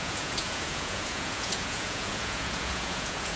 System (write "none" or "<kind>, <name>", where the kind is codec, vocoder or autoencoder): vocoder, Vocos